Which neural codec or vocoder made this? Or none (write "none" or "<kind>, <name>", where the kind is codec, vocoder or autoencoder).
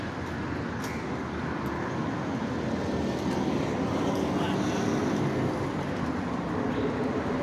none